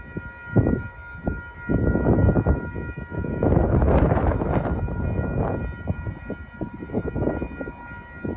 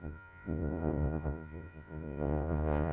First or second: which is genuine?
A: first